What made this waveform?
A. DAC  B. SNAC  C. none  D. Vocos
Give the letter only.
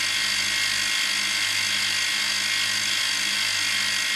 C